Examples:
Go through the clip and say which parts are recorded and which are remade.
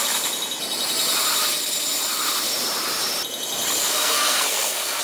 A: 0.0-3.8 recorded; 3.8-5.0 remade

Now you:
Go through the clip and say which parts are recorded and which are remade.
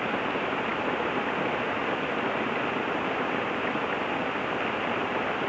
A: 0.0-5.5 recorded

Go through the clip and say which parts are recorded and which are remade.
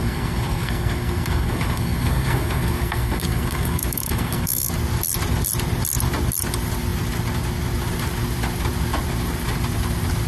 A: 0.0-4.7 remade; 4.7-10.3 recorded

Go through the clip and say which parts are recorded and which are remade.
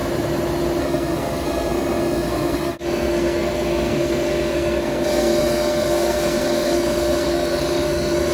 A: 0.0-0.8 recorded; 0.8-8.3 remade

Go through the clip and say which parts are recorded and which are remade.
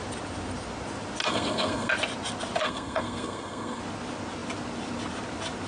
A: 0.0-1.2 recorded; 1.2-1.9 remade; 1.9-2.6 recorded; 2.6-3.8 remade; 3.8-5.7 recorded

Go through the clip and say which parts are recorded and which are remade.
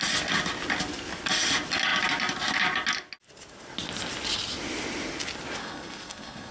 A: 0.0-5.6 recorded; 5.6-6.5 remade